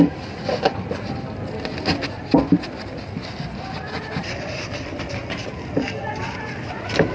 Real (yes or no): yes